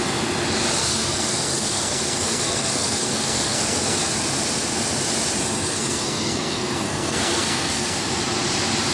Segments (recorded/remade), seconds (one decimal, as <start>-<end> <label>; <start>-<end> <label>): 0.0-0.8 recorded; 0.8-4.1 remade; 4.1-5.6 recorded; 5.6-8.2 remade; 8.2-8.9 recorded